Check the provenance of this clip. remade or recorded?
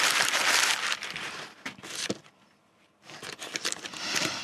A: recorded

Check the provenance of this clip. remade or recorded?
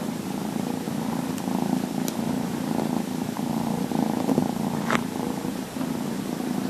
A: remade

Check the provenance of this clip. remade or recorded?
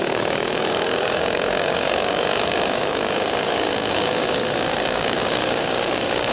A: remade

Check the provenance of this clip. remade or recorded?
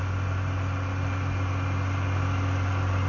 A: recorded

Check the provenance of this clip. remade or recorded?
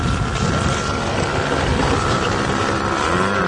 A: recorded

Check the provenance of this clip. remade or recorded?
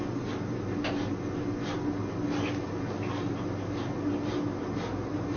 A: recorded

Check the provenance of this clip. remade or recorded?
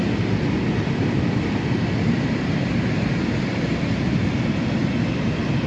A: recorded